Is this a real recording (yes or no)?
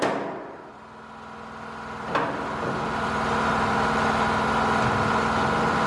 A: yes